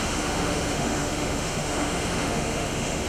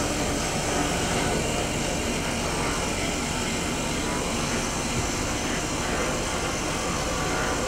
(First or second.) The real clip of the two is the second